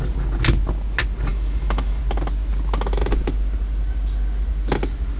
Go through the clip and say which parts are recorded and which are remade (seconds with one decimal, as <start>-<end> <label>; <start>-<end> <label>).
0.0-1.3 recorded; 1.3-2.0 remade; 2.0-5.2 recorded

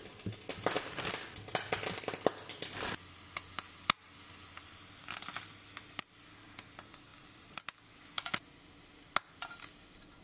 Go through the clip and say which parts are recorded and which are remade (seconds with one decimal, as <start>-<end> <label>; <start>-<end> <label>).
0.0-10.2 recorded

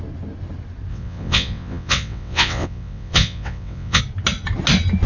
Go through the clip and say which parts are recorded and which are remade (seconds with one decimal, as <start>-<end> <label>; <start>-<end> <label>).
0.0-0.9 recorded; 0.9-4.0 remade; 4.0-5.1 recorded

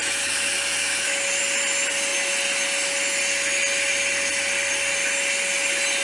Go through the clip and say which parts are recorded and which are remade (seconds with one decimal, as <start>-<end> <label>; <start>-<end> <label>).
0.0-1.4 remade; 1.4-6.0 recorded

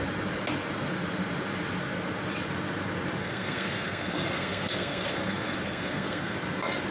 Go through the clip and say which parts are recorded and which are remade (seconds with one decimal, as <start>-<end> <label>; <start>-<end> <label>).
0.0-3.2 recorded; 3.2-6.4 remade; 6.4-6.9 recorded